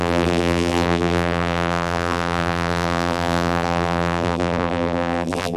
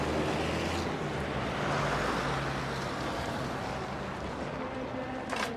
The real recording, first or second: second